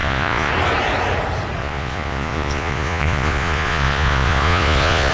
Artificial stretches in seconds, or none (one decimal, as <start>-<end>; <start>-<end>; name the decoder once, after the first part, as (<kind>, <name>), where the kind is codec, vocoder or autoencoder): 0.0-0.5 (vocoder, Vocos); 1.6-5.1